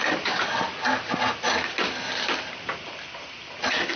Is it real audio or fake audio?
real